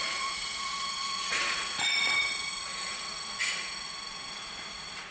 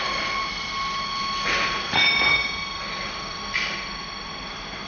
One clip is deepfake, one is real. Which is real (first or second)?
second